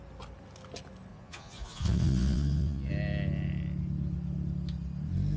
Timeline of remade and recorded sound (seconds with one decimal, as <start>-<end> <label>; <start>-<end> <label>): 0.0-1.1 recorded; 1.1-2.9 remade; 2.9-5.4 recorded